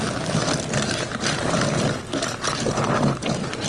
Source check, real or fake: real